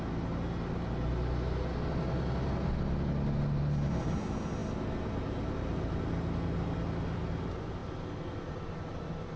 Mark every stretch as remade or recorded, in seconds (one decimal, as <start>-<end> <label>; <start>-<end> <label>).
0.0-9.4 recorded